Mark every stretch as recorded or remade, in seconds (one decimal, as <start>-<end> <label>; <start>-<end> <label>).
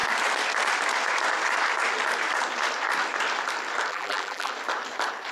0.0-3.9 recorded; 3.9-4.5 remade; 4.5-5.3 recorded